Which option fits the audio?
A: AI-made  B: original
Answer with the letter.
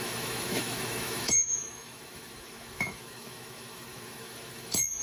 A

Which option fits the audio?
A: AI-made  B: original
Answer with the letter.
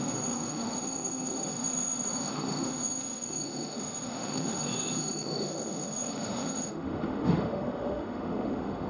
A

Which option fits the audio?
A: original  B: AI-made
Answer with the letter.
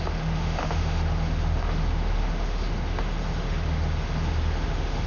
B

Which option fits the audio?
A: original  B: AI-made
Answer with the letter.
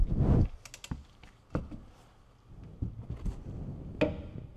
A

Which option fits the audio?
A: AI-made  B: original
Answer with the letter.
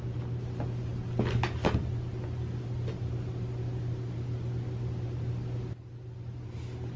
B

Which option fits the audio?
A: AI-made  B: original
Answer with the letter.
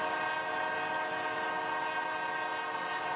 B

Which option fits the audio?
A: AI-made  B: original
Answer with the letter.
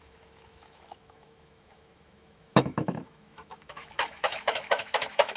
A